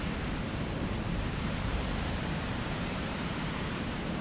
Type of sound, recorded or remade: remade